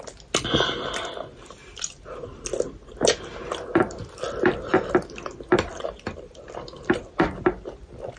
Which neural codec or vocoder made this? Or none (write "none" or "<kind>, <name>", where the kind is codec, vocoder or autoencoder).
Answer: none